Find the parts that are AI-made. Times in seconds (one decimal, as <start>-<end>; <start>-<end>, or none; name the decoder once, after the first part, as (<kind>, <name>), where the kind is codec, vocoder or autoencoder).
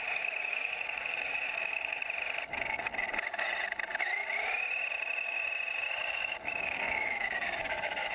0.0-2.0 (codec, DAC); 6.1-8.1